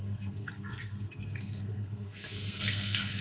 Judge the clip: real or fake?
fake